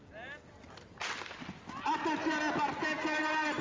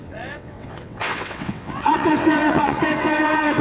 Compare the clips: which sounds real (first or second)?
first